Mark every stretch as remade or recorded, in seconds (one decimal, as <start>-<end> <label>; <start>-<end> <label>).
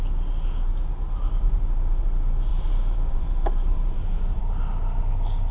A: 0.0-2.5 recorded; 2.5-4.4 remade; 4.4-5.5 recorded